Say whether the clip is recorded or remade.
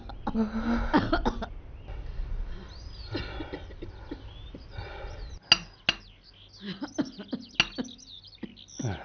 recorded